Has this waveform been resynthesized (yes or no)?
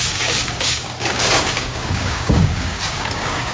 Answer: yes